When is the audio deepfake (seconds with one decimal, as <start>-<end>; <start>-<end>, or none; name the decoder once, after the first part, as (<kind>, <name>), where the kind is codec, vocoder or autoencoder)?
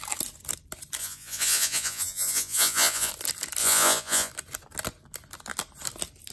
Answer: 1.0-3.1 (vocoder, Vocos); 3.6-4.3